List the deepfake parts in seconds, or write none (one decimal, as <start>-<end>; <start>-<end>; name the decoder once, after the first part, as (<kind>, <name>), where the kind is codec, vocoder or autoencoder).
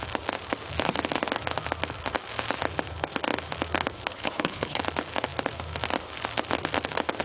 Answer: 4.1-4.8 (codec, HILCodec)